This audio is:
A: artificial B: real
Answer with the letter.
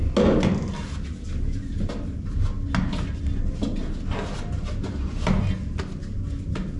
B